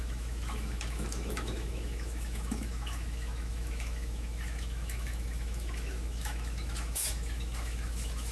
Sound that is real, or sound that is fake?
fake